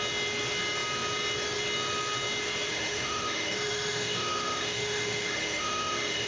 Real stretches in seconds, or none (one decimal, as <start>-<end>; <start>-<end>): 0.0-2.7